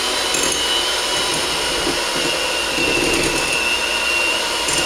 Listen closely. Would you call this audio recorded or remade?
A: recorded